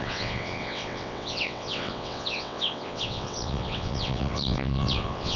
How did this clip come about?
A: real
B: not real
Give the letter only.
B